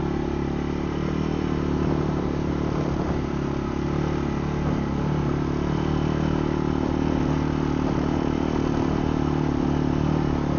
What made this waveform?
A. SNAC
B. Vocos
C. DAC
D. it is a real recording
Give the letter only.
D